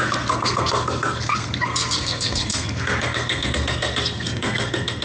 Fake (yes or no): yes